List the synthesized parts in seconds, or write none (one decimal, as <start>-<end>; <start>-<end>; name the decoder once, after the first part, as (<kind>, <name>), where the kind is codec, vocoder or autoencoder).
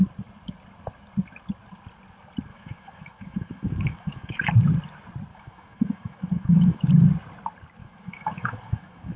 2.5-4.5 (autoencoder, DAC-VAE); 5.3-6.9; 7.8-9.2